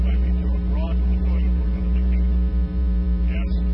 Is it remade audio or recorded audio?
remade